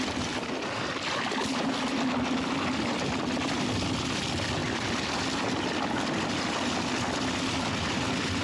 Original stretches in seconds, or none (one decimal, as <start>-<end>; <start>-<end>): 0.0-8.4